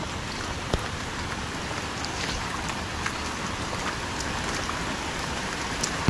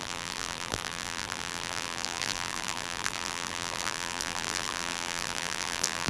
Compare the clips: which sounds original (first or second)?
first